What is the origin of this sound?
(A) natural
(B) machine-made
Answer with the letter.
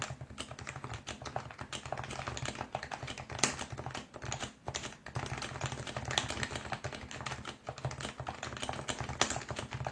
A